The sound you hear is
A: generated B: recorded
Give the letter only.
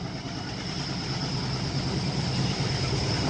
B